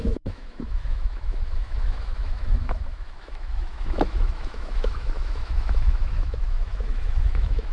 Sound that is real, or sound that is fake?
fake